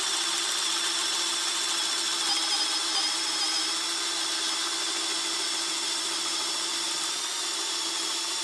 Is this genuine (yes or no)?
yes